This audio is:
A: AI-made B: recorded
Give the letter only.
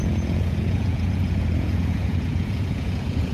A